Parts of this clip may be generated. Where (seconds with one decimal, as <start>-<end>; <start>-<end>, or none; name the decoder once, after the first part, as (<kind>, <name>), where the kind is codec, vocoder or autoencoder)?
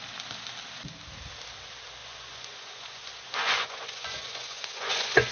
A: 2.0-5.3 (vocoder, Vocos)